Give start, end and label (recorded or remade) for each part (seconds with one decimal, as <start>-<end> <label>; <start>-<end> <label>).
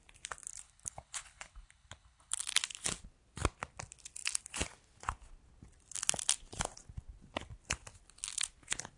0.0-0.5 recorded; 0.5-2.4 remade; 2.4-9.0 recorded